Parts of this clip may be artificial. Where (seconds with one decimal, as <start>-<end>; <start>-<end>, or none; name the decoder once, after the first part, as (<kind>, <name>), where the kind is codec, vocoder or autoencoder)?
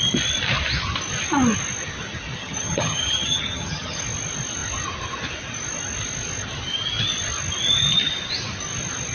2.4-4.0 (vocoder, HiFi-GAN)